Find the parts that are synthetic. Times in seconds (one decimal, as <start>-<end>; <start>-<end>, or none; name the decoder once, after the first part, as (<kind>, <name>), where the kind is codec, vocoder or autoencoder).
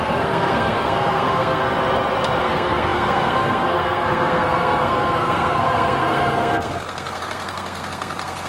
0.0-1.6 (codec, SNAC); 2.4-8.5